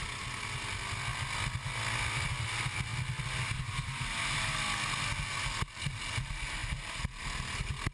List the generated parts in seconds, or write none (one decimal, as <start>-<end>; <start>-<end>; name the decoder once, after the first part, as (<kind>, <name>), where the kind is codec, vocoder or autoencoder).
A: none